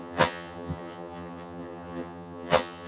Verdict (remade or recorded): remade